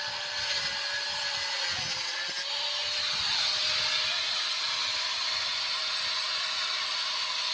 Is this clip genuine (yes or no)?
yes